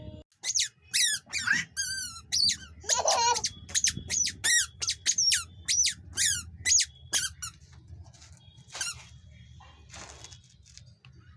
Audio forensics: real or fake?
real